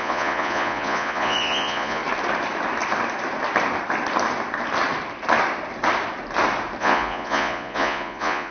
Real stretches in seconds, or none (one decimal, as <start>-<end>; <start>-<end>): 2.0-6.8